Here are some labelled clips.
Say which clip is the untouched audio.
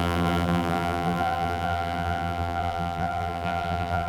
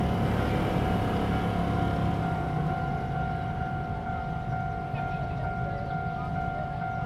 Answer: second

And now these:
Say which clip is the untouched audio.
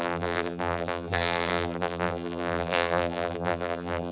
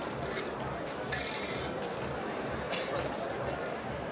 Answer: second